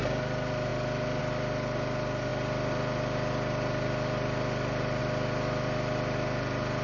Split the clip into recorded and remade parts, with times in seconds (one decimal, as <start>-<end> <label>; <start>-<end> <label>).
0.0-6.8 recorded